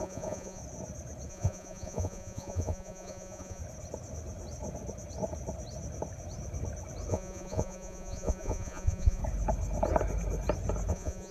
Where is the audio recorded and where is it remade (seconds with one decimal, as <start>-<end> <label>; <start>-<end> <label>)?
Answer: 0.0-0.6 remade; 0.6-1.3 recorded; 1.3-3.6 remade; 3.6-7.1 recorded; 7.1-9.2 remade; 9.2-10.9 recorded; 10.9-11.3 remade

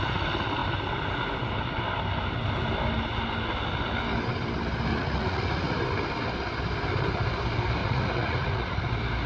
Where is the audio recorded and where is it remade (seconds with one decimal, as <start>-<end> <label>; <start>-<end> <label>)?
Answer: 0.0-4.9 recorded; 4.9-5.8 remade; 5.8-7.8 recorded; 7.8-8.9 remade; 8.9-9.3 recorded

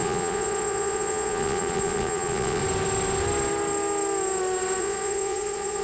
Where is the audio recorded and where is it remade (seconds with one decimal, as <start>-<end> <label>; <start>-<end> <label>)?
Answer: 0.0-2.6 remade; 2.6-4.8 recorded; 4.8-5.8 remade

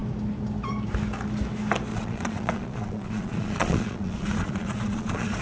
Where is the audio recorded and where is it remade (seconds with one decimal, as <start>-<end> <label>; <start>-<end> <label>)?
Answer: 0.0-1.9 recorded; 1.9-5.4 remade